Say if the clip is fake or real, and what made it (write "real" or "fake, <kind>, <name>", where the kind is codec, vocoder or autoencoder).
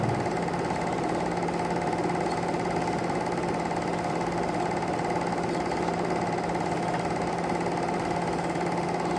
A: real